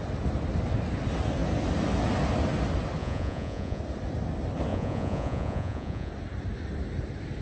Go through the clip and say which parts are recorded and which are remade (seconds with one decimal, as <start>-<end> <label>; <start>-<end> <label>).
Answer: 0.0-3.0 recorded; 3.0-3.8 remade; 3.8-4.7 recorded; 4.7-6.1 remade; 6.1-7.4 recorded